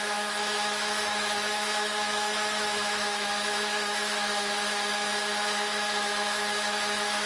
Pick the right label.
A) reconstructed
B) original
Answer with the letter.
A